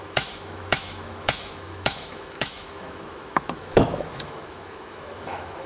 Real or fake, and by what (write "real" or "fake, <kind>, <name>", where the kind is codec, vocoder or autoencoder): fake, autoencoder, DAC-VAE